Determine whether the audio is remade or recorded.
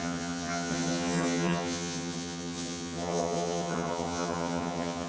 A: remade